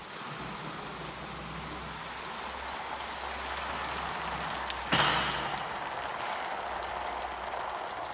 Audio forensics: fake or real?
real